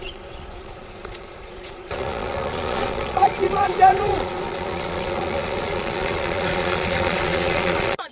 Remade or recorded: remade